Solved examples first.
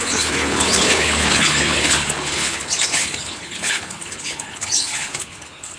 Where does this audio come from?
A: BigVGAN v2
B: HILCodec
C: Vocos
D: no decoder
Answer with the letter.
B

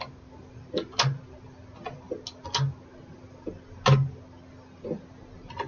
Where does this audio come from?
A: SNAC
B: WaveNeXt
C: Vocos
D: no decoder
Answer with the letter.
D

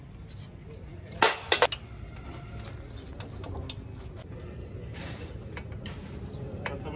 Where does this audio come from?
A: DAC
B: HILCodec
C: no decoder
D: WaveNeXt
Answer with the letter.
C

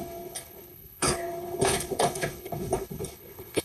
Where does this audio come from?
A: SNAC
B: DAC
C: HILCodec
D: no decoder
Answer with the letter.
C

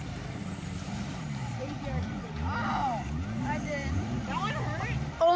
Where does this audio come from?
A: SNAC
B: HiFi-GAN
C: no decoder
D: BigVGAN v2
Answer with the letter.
D